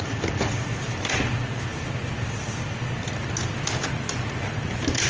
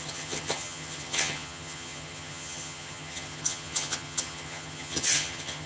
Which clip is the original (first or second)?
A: first